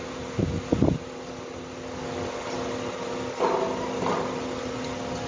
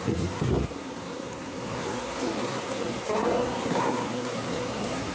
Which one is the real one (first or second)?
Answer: first